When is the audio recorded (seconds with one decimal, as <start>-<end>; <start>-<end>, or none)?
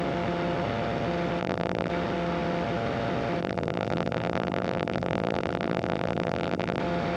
0.0-1.4; 1.9-3.4; 6.8-7.2